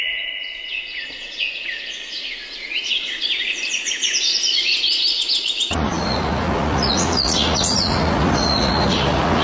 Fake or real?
fake